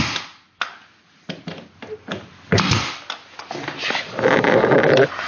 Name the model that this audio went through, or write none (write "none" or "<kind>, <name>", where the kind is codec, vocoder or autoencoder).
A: none